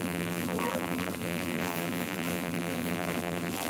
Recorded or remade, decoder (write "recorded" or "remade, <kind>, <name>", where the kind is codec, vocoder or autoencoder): remade, vocoder, BigVGAN v2